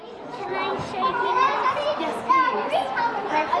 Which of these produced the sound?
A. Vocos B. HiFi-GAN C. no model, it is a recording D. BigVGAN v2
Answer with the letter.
D